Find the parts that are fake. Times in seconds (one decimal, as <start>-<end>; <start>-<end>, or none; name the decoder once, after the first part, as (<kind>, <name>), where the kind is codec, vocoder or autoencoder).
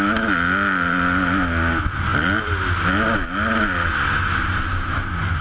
none